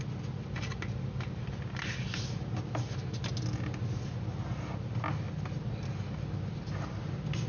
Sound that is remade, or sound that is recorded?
recorded